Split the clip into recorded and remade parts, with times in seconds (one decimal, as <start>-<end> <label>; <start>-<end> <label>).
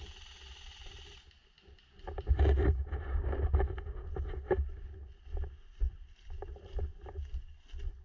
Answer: 0.0-8.0 recorded